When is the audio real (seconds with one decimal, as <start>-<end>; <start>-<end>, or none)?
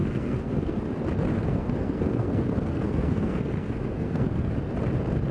0.8-1.3; 4.5-5.3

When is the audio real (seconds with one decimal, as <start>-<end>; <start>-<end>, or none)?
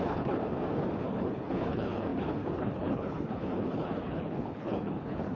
0.4-1.0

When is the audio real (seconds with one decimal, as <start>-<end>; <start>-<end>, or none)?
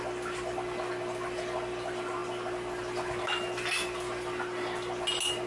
0.0-5.5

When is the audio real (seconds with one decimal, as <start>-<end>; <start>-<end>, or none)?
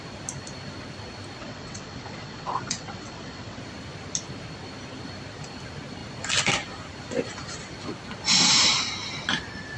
0.0-1.4; 3.6-9.8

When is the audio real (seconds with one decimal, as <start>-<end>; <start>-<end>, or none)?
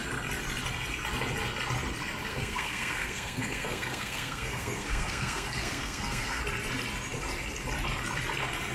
0.0-2.3; 6.4-8.7